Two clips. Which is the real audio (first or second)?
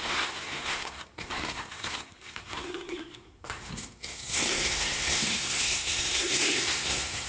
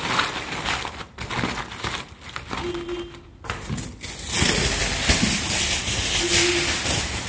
second